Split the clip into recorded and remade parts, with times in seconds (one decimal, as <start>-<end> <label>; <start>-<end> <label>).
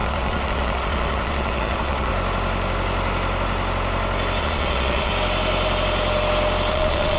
0.0-2.1 remade; 2.1-4.4 recorded; 4.4-5.1 remade; 5.1-6.7 recorded; 6.7-7.2 remade